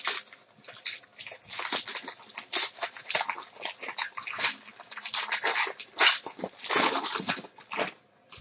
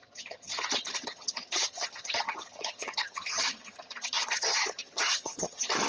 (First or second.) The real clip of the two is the first